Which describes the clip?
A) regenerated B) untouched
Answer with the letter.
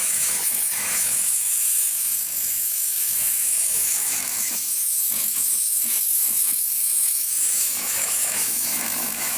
A